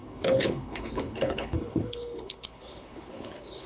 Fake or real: fake